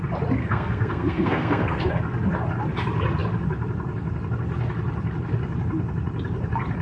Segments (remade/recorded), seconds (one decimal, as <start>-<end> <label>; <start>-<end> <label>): 0.0-0.4 recorded; 0.4-1.9 remade; 1.9-6.8 recorded